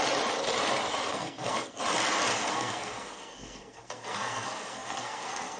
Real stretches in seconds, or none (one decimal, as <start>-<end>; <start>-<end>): 0.0-1.1; 1.8-2.3